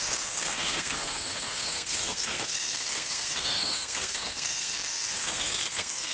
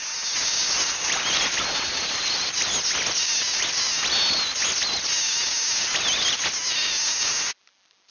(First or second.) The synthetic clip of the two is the first